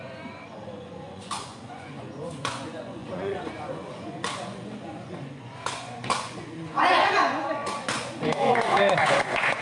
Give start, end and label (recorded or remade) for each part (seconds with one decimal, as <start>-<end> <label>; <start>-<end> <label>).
0.0-9.6 remade